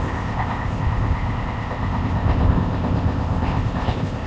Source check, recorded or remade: remade